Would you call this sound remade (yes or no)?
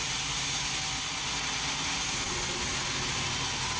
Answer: no